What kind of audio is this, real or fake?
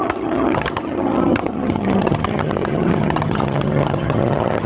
fake